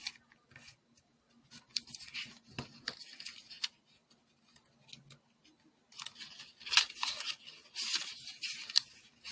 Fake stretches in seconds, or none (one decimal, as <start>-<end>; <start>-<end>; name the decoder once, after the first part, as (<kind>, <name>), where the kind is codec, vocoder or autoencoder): none